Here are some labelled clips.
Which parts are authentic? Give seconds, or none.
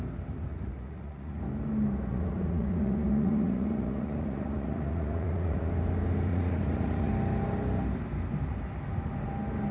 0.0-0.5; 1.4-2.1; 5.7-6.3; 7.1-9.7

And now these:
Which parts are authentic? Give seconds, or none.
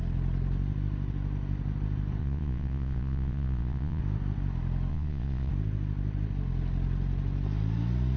0.0-2.2; 4.0-4.9; 5.5-8.2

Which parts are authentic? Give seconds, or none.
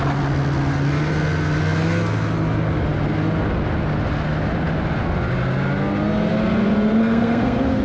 0.0-7.0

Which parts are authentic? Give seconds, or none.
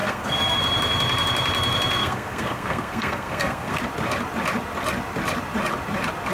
0.6-2.0; 3.8-6.3